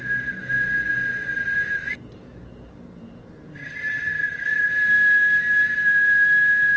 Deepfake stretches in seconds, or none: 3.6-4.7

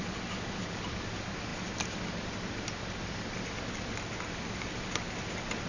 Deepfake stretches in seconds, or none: none

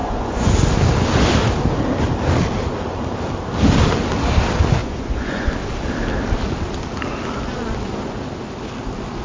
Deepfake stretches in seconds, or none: 0.0-0.5; 4.8-5.5

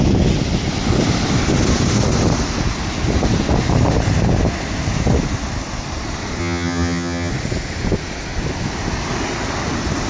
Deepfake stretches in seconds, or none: 6.4-7.3

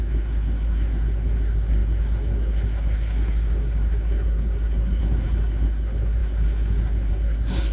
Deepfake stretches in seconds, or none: 0.0-7.7

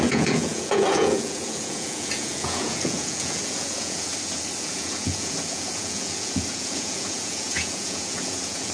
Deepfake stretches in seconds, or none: 0.0-4.1; 4.6-8.7